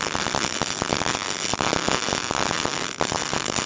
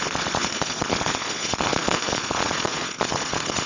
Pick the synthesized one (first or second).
second